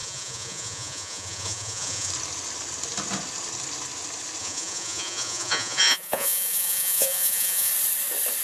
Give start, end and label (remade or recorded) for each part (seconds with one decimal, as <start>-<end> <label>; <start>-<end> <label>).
0.0-2.1 remade; 2.1-4.4 recorded; 4.4-7.7 remade; 7.7-8.4 recorded